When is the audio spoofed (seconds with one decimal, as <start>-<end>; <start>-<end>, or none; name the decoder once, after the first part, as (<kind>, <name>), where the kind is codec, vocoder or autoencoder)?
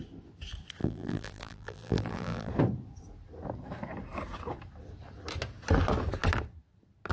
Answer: 0.8-2.5 (vocoder, BigVGAN v2)